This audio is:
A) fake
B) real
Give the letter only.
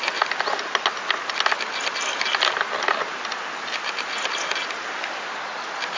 B